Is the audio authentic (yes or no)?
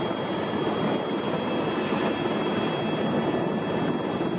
yes